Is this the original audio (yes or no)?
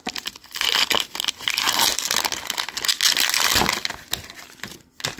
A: yes